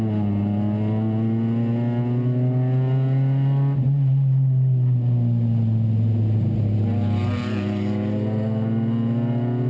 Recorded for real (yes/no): yes